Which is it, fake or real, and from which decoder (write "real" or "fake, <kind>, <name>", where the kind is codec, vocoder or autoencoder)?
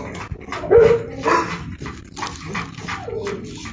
real